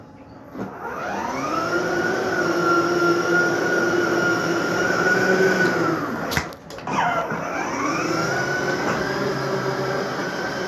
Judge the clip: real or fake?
real